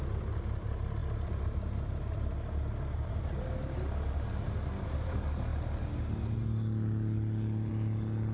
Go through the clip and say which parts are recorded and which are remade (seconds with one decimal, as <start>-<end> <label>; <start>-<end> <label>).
0.0-8.3 recorded

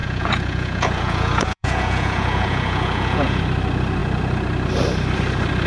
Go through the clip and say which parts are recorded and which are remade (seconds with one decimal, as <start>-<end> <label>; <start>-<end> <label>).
0.0-3.4 remade; 3.4-5.7 recorded

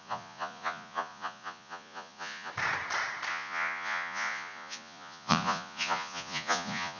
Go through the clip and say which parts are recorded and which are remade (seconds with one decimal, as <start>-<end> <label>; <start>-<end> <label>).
0.0-2.5 remade; 2.5-3.3 recorded; 3.3-7.0 remade

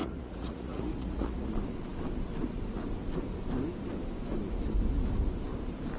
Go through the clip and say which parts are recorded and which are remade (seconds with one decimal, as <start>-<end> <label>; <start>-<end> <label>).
0.0-1.5 remade; 1.5-6.0 recorded

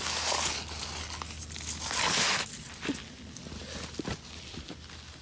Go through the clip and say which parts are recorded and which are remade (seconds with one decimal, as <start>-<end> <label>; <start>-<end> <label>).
0.0-5.2 recorded

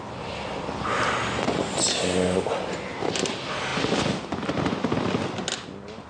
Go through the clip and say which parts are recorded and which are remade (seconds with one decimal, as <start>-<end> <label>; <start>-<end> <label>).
0.0-6.1 recorded

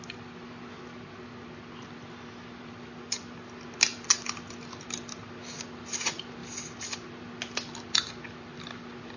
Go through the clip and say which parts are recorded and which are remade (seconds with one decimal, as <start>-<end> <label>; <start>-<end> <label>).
0.0-9.2 recorded

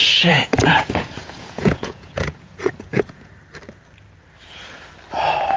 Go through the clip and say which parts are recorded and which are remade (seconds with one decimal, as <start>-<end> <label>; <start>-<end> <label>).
0.0-3.3 remade; 3.3-5.6 recorded